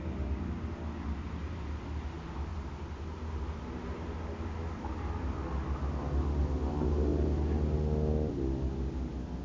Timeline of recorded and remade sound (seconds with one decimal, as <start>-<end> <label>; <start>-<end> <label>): 0.0-7.1 recorded; 7.1-8.3 remade; 8.3-9.4 recorded